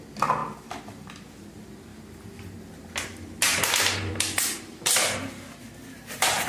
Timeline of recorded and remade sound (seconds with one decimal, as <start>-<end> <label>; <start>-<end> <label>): 0.0-6.5 recorded